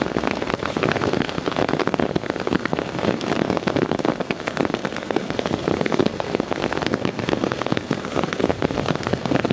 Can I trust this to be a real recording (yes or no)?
no